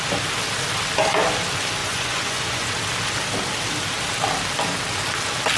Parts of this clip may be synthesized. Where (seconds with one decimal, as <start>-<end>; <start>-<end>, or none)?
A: 1.8-2.7